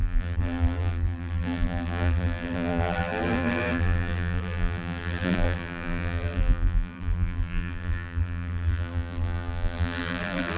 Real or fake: fake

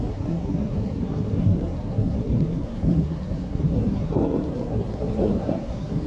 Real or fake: fake